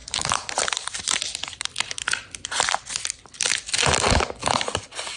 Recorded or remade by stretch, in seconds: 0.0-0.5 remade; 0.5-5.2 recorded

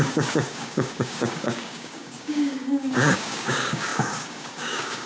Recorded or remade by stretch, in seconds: 0.0-5.1 remade

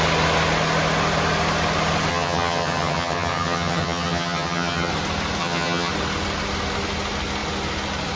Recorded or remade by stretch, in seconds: 0.0-2.1 recorded; 2.1-4.9 remade; 4.9-5.4 recorded; 5.4-5.9 remade; 5.9-8.2 recorded

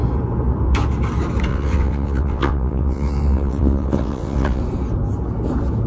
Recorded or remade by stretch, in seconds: 0.0-1.5 recorded; 1.5-4.6 remade; 4.6-5.9 recorded

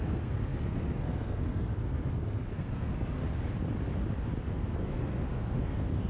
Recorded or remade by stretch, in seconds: 0.0-3.2 remade; 3.2-4.5 recorded; 4.5-6.1 remade

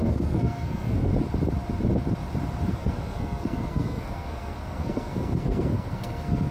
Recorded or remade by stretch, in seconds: 0.0-1.1 remade; 1.1-2.7 recorded; 2.7-6.5 remade

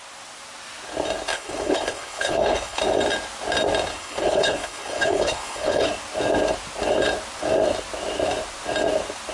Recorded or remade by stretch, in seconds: 0.0-1.3 recorded; 1.3-2.8 remade; 2.8-3.9 recorded; 3.9-5.9 remade; 5.9-9.3 recorded

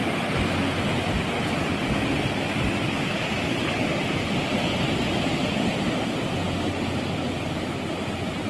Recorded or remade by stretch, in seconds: 0.0-8.5 recorded